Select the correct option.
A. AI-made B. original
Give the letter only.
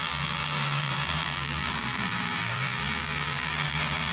A